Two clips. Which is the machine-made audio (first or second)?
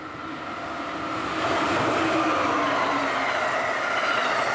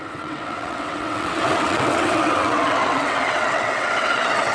second